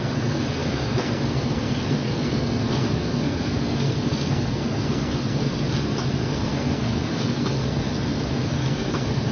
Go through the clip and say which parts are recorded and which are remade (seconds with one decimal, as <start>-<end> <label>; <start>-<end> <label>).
0.0-9.3 remade